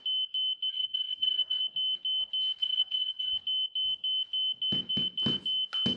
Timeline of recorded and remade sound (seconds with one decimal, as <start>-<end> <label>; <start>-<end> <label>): 0.0-0.7 recorded; 0.7-1.6 remade; 1.6-2.6 recorded; 2.6-3.3 remade; 3.3-6.0 recorded